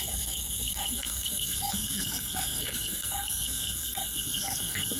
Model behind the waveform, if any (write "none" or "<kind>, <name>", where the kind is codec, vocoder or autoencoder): codec, SNAC